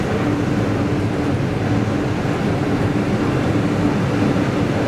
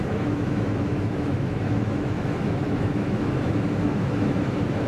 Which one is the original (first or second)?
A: first